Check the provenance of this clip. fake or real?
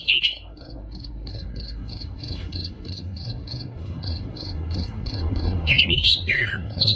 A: fake